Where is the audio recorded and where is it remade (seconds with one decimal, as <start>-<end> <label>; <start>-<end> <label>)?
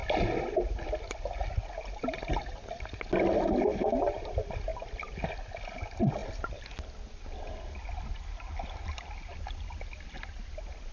0.0-10.9 recorded